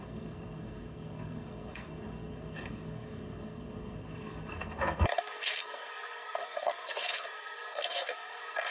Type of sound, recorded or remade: remade